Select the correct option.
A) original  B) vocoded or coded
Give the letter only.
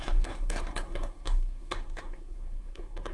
B